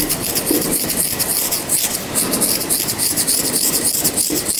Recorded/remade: recorded